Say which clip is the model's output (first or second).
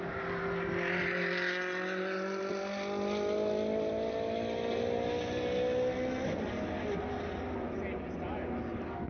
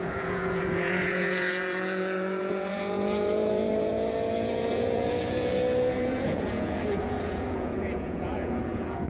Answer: second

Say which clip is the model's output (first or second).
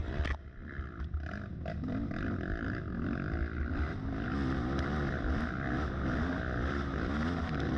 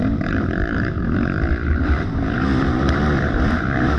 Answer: second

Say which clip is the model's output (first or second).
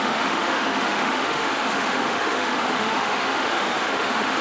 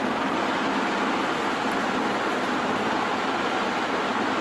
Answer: first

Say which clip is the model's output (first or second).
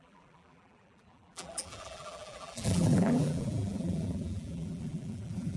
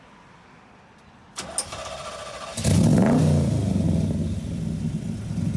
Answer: first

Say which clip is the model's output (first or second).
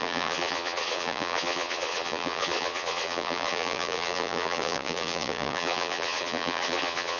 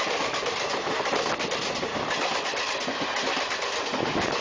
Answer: first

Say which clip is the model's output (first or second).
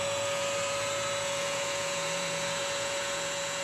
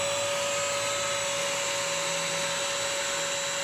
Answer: first